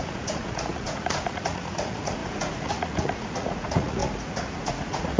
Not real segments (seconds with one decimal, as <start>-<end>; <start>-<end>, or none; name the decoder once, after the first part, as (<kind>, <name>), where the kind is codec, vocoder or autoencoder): 0.0-5.2 (vocoder, Vocos)